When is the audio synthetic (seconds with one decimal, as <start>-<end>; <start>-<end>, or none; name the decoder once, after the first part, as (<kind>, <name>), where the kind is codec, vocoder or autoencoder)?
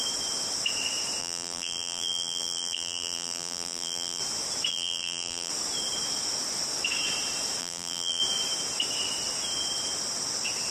1.2-4.2 (vocoder, BigVGAN v2); 4.7-5.5; 7.6-8.2